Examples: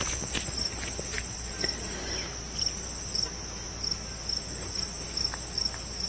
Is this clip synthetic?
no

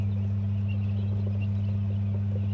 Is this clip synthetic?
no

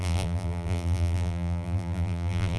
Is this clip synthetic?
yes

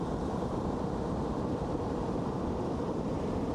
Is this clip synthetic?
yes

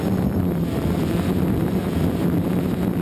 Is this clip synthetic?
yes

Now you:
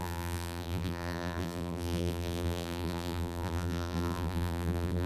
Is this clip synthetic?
yes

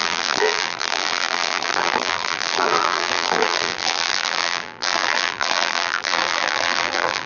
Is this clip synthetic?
yes